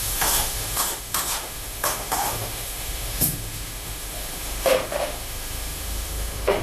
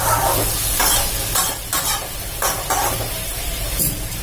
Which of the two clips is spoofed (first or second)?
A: first